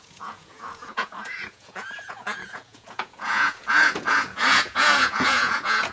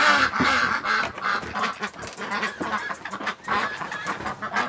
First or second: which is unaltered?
second